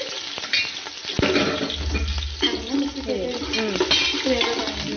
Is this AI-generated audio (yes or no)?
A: no